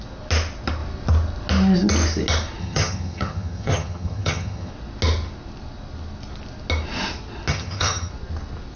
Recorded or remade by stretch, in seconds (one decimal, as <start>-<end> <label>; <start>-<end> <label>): 0.0-2.6 recorded; 2.6-4.7 remade; 4.7-7.5 recorded; 7.5-8.1 remade; 8.1-8.8 recorded